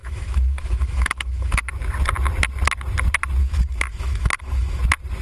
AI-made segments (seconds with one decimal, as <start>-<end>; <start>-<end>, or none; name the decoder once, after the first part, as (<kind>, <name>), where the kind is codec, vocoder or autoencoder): 0.0-1.6 (autoencoder, DAC-VAE); 3.4-4.8